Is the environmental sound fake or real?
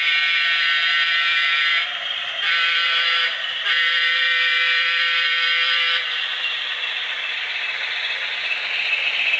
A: fake